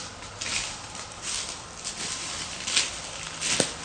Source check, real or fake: real